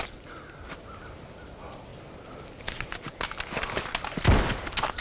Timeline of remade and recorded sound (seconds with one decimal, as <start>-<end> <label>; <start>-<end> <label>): 0.0-5.0 recorded

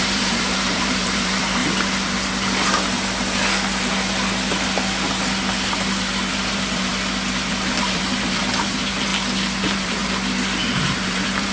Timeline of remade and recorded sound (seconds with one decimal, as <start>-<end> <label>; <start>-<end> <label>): 0.0-1.6 remade; 1.6-6.3 recorded; 6.3-6.9 remade; 6.9-7.5 recorded; 7.5-9.1 remade; 9.1-9.6 recorded; 9.6-10.0 remade; 10.0-10.6 recorded; 10.6-11.5 remade

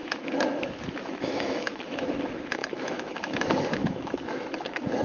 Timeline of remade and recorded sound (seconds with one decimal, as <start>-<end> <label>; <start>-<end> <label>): 0.0-5.0 remade

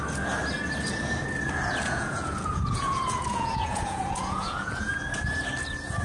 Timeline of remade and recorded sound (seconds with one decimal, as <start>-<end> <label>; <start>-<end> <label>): 0.0-1.6 recorded; 1.6-5.2 remade; 5.2-6.0 recorded

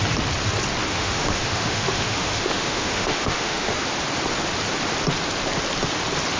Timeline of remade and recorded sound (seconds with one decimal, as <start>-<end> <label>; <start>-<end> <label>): 0.0-0.9 recorded; 0.9-3.7 remade; 3.7-6.4 recorded

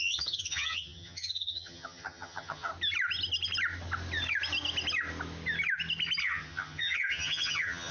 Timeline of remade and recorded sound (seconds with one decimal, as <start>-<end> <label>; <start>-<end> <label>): 0.0-2.7 remade; 2.7-6.2 recorded; 6.2-7.9 remade

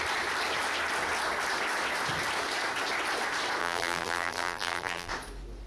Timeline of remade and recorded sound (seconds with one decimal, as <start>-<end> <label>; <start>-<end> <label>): 0.0-3.6 recorded; 3.6-5.1 remade; 5.1-5.7 recorded

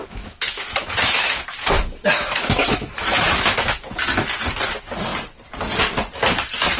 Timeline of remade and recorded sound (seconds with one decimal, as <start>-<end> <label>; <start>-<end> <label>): 0.0-3.9 remade; 3.9-6.8 recorded